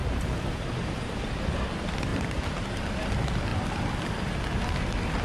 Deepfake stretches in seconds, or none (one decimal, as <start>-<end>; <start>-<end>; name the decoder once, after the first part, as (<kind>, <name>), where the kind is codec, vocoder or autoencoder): 0.0-1.2 (vocoder, BigVGAN v2); 2.1-2.8